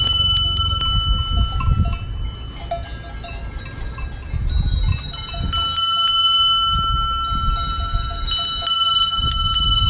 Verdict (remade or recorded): recorded